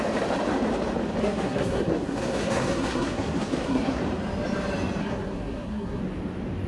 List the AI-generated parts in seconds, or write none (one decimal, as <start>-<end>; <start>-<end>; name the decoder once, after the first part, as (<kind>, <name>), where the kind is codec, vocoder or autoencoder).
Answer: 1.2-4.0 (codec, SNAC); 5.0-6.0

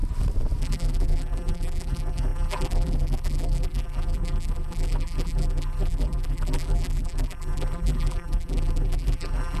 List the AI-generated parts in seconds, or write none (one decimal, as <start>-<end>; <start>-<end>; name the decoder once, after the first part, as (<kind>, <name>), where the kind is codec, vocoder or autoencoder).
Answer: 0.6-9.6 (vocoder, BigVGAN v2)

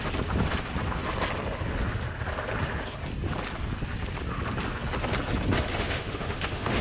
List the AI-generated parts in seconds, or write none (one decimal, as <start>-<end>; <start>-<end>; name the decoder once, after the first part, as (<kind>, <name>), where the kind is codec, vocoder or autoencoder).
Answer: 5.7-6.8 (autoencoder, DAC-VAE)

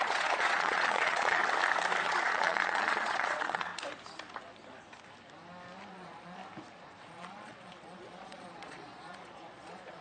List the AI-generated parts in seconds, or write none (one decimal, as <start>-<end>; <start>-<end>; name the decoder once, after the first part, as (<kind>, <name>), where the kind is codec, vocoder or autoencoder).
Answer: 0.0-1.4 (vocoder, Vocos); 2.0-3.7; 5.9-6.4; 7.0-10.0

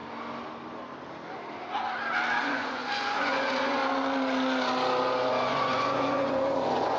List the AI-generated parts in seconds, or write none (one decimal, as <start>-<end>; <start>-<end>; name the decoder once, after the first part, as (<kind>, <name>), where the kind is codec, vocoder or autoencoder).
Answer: 2.4-3.8 (vocoder, Vocos); 5.3-7.0

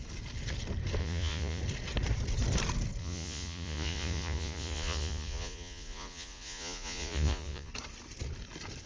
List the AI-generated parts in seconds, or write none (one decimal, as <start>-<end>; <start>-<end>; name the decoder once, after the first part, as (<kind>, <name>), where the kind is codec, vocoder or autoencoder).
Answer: 1.0-1.6 (vocoder, Vocos); 3.0-7.7

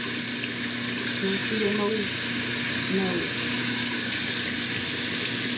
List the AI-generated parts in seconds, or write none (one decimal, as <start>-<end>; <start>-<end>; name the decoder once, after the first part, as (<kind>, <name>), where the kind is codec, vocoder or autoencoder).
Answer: 3.6-4.3 (codec, DAC)

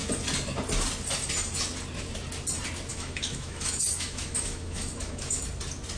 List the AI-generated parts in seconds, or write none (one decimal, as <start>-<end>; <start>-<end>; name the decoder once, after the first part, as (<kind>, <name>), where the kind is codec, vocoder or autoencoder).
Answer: 2.9-5.4 (autoencoder, DAC-VAE)